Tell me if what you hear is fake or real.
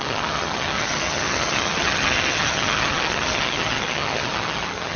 fake